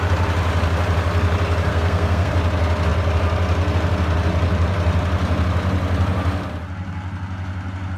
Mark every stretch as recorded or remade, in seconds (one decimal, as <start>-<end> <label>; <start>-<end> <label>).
0.0-1.7 recorded; 1.7-2.3 remade; 2.3-8.0 recorded